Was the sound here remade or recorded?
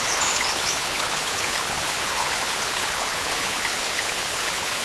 remade